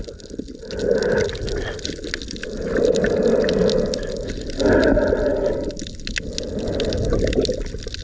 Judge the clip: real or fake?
real